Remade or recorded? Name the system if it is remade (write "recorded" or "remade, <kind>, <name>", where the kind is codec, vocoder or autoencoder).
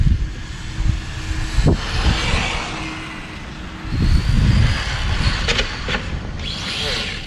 recorded